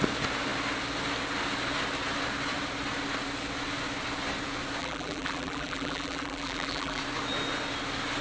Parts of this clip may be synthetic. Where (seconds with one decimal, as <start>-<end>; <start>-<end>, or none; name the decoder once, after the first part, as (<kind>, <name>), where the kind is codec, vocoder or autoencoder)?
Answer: 4.8-7.0 (vocoder, BigVGAN v2)